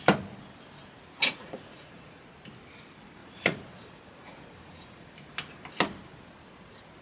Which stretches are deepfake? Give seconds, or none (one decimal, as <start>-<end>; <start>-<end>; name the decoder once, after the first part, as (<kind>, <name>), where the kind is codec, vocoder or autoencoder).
1.2-2.2 (vocoder, Vocos); 3.2-5.1